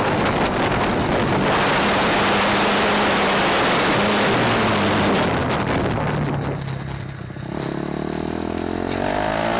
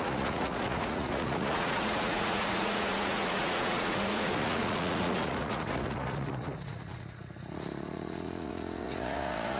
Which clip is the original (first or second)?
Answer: first